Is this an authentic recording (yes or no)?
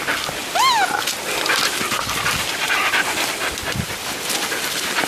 yes